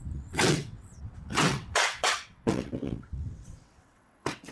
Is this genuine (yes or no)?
no